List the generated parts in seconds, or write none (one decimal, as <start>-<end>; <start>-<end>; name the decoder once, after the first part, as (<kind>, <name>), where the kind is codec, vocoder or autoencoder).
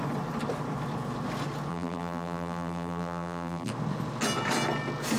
1.7-3.7 (vocoder, BigVGAN v2)